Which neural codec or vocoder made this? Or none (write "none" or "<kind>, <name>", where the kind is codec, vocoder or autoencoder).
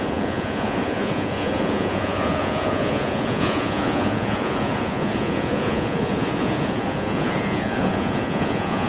vocoder, Vocos